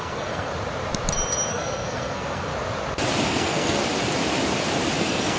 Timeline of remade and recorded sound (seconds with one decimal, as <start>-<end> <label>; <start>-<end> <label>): 0.0-0.5 remade; 0.5-1.5 recorded; 1.5-2.5 remade; 2.5-3.3 recorded; 3.3-3.8 remade; 3.8-5.0 recorded; 5.0-5.4 remade